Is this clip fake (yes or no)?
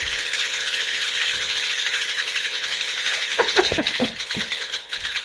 yes